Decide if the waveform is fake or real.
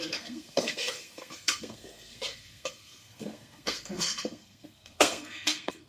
fake